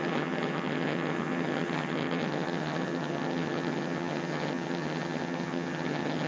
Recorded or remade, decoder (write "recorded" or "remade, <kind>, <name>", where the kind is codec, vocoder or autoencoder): remade, vocoder, HiFi-GAN